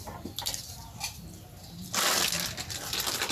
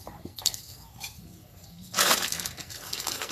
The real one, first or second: first